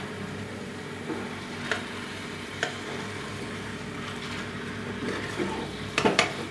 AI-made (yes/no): yes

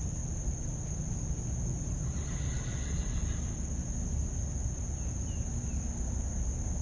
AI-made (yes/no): no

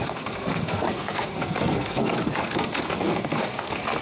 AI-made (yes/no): yes